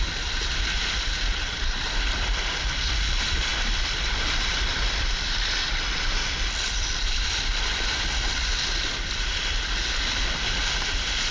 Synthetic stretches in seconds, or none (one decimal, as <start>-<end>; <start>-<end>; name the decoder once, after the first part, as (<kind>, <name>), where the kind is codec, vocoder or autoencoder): 0.0-11.3 (vocoder, BigVGAN v2)